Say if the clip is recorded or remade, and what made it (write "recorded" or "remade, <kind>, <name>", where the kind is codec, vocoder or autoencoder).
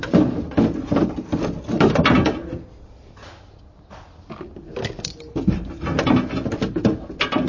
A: recorded